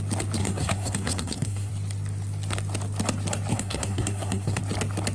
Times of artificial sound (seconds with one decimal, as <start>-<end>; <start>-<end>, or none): 0.4-1.7; 3.5-4.6